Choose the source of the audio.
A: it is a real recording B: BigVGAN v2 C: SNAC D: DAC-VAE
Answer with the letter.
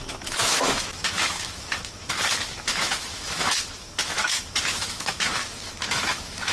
D